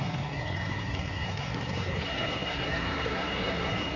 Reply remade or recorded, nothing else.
remade